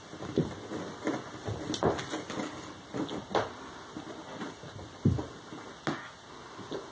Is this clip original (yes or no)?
yes